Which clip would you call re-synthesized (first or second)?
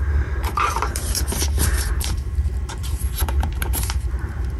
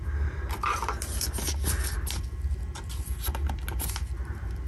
first